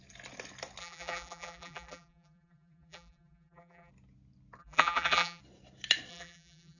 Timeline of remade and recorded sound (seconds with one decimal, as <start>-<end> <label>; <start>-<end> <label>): 0.0-0.8 recorded; 0.8-3.9 remade; 3.9-4.6 recorded; 4.6-5.4 remade; 5.4-6.1 recorded; 6.1-6.8 remade

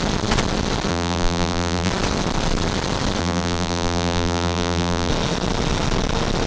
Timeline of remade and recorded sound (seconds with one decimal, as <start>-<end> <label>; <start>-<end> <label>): 0.0-0.9 recorded; 0.9-1.9 remade; 1.9-3.2 recorded; 3.2-5.1 remade; 5.1-6.5 recorded